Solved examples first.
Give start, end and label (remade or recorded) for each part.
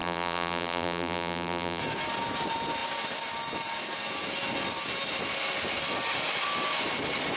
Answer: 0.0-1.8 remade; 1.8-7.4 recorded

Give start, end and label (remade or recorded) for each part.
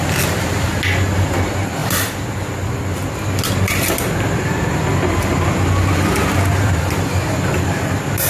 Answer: 0.0-8.3 recorded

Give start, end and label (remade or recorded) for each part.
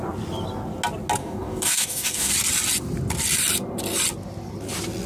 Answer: 0.0-1.2 recorded; 1.2-2.3 remade; 2.3-5.1 recorded